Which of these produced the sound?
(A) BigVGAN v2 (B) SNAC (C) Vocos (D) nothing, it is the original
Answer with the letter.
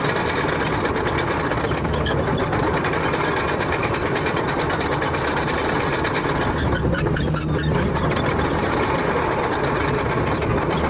A